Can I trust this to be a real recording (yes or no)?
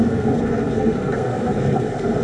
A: no